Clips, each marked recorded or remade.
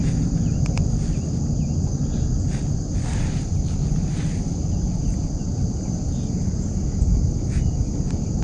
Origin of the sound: recorded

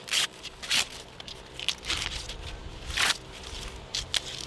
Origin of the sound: recorded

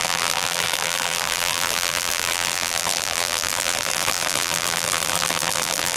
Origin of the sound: remade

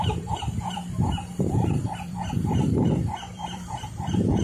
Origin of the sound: remade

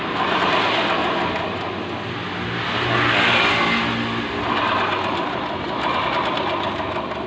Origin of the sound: recorded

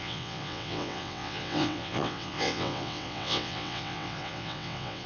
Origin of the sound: remade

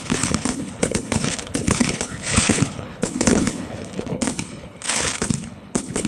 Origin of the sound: remade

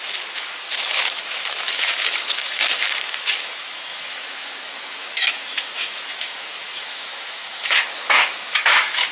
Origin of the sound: remade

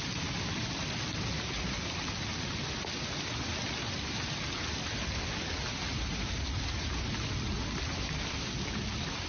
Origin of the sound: recorded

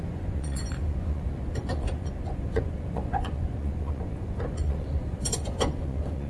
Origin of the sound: remade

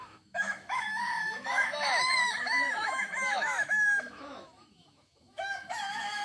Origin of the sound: remade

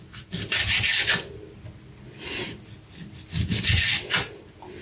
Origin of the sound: recorded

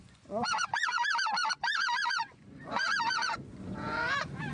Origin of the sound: remade